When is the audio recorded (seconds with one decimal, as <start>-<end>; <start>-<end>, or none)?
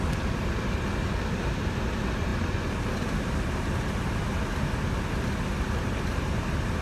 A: 0.0-6.8